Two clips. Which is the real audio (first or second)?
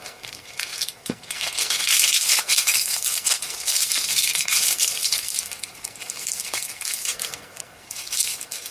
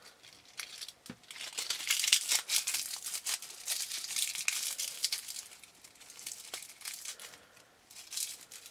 second